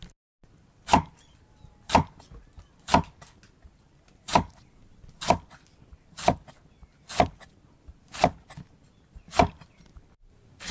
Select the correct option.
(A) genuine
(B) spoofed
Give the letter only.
A